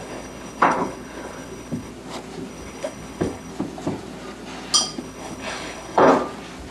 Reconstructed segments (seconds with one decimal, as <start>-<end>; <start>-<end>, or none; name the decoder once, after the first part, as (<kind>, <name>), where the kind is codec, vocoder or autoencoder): 0.0-1.9 (codec, HILCodec); 2.5-3.5; 5.0-6.1